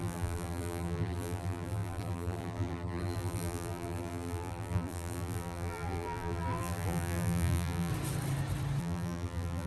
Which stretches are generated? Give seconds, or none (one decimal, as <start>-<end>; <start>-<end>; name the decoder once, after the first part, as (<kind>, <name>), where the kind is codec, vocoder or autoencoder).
0.0-7.9 (vocoder, BigVGAN v2); 8.8-9.7